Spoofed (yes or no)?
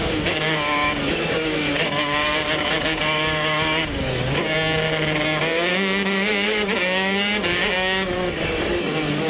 yes